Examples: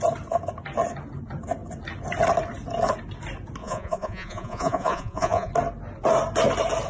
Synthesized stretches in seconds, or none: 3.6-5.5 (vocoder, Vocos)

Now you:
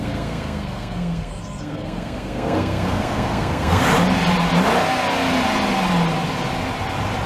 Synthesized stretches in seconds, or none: 0.0-3.9 (codec, SNAC)

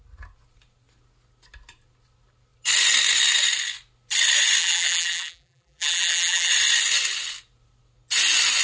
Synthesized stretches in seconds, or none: 4.6-6.5 (vocoder, BigVGAN v2)

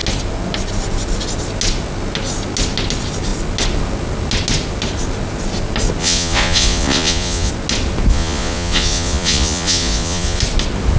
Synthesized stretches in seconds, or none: 6.0-7.5 (vocoder, Vocos); 8.1-10.4